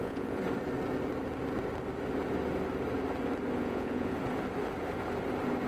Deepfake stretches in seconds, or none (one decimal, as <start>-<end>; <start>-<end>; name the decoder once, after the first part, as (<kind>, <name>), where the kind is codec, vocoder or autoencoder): 0.0-0.4 (vocoder, Vocos); 3.6-4.1